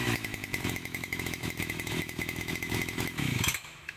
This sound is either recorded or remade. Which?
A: remade